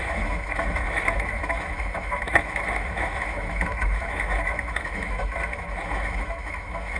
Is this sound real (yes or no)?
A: no